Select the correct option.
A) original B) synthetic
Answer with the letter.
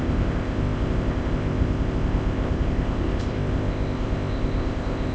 B